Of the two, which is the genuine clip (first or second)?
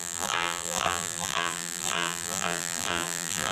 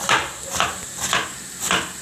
second